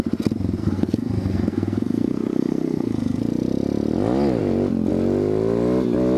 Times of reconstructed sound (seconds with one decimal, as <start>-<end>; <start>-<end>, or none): 0.6-3.2

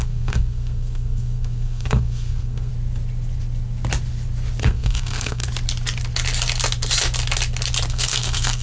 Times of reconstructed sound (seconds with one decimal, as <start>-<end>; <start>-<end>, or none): 0.0-2.7; 4.6-5.4; 7.9-8.6

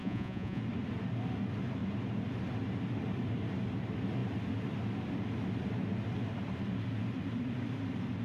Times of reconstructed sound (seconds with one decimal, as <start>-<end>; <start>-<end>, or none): 0.0-0.6

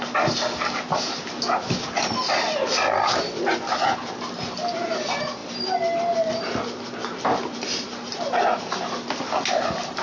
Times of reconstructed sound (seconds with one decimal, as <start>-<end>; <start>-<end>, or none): none

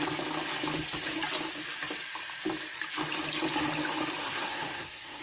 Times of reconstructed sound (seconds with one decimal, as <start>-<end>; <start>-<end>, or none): 4.2-5.2